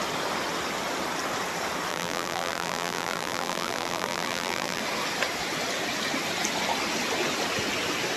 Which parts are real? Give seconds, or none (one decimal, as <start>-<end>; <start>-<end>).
0.0-1.9; 4.8-8.2